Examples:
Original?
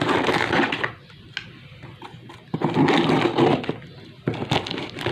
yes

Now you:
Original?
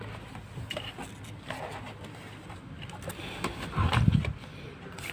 yes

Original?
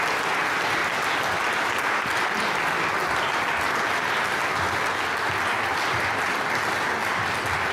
yes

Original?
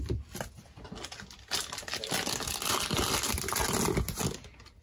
yes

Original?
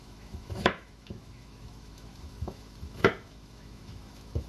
no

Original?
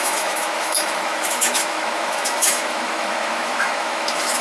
no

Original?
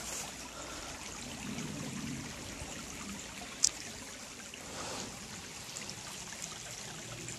yes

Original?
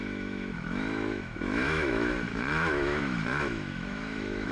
no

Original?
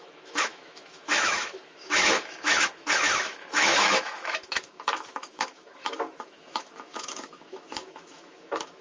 no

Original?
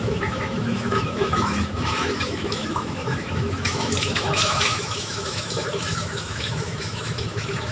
no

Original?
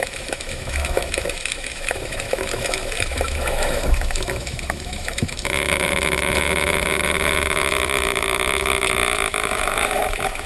no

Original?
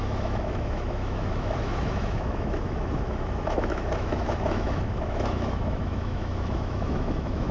no